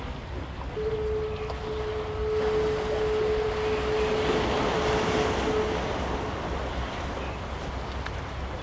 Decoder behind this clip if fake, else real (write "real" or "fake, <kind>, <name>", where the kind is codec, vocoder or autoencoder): real